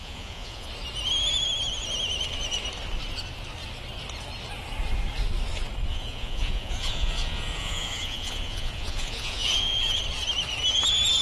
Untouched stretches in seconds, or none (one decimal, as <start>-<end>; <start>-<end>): 0.7-5.9; 10.0-11.2